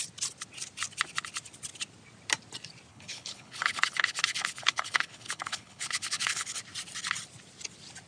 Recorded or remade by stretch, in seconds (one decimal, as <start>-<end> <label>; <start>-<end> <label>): 0.0-2.9 recorded; 2.9-6.6 remade; 6.6-8.1 recorded